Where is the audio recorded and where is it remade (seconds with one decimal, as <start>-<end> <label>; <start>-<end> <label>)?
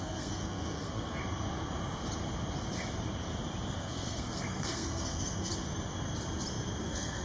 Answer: 0.0-1.2 remade; 1.2-3.7 recorded; 3.7-5.5 remade; 5.5-6.8 recorded; 6.8-7.2 remade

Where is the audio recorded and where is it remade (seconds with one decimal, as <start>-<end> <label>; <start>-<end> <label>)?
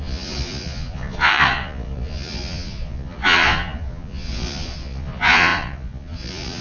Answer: 0.0-6.6 remade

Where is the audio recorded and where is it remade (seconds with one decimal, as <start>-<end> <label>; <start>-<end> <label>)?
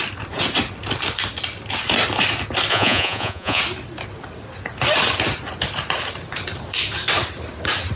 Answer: 0.0-2.7 recorded; 2.7-3.6 remade; 3.6-8.0 recorded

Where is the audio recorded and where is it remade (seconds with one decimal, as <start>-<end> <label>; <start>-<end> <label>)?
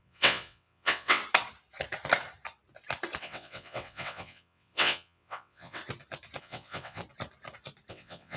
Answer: 0.0-1.2 remade; 1.2-3.2 recorded; 3.2-5.8 remade; 5.8-6.4 recorded; 6.4-7.0 remade; 7.0-7.9 recorded; 7.9-8.4 remade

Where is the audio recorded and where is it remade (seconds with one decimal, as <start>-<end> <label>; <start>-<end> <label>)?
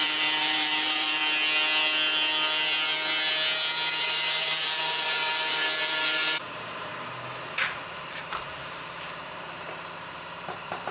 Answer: 0.0-1.2 remade; 1.2-3.9 recorded; 3.9-6.9 remade; 6.9-8.1 recorded; 8.1-10.9 remade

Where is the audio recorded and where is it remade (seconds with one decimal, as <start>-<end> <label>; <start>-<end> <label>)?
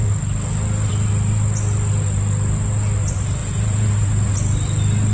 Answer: 0.0-3.4 recorded; 3.4-4.3 remade; 4.3-5.1 recorded